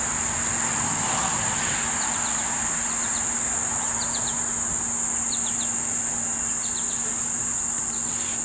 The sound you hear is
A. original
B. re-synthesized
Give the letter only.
A